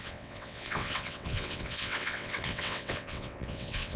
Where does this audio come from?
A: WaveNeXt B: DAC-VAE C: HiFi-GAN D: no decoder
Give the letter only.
A